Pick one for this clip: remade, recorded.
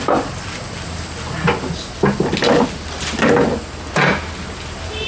recorded